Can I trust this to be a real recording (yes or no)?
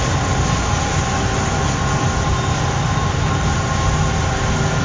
yes